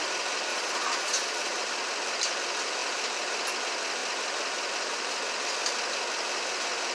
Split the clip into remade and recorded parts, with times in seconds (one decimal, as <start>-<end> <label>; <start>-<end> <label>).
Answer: 0.0-0.5 recorded; 0.5-1.6 remade; 1.6-6.9 recorded

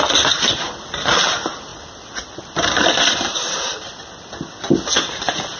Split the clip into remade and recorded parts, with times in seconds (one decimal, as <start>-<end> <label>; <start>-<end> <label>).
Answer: 0.0-5.6 recorded